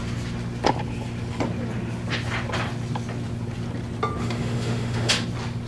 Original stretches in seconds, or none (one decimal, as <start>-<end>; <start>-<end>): 0.0-4.2; 5.1-5.7